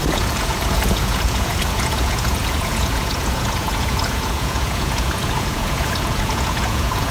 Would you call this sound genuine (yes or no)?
no